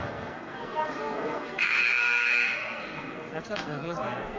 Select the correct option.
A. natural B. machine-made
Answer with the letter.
B